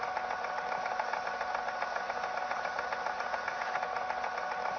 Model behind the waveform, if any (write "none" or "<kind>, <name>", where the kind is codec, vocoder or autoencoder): none